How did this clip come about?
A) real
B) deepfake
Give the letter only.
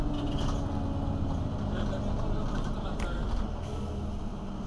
A